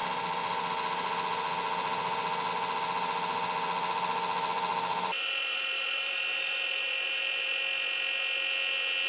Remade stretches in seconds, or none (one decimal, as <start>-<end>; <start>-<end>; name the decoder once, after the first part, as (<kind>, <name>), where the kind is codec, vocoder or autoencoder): 4.7-7.6 (vocoder, BigVGAN v2)